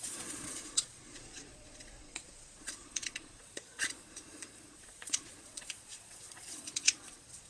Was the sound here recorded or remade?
remade